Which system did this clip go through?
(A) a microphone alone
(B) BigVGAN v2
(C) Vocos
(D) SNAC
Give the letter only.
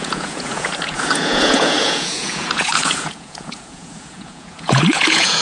C